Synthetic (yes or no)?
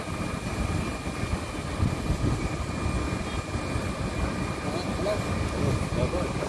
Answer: no